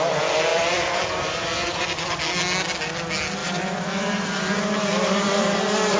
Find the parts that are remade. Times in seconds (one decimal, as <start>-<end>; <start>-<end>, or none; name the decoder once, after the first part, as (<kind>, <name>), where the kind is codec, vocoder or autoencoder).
0.5-2.2 (vocoder, BigVGAN v2); 3.4-6.0